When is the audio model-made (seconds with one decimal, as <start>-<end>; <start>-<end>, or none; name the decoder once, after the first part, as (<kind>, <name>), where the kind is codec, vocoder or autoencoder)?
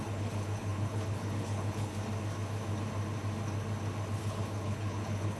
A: 0.0-1.9 (codec, HILCodec); 4.2-5.4